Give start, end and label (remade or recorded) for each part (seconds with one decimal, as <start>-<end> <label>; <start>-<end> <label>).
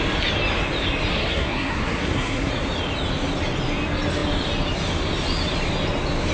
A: 0.0-1.1 recorded; 1.1-2.5 remade; 2.5-6.3 recorded